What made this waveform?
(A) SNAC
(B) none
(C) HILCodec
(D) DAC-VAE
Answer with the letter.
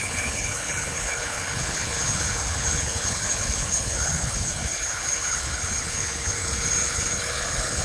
C